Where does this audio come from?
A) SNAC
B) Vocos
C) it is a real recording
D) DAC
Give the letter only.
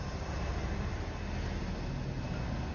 C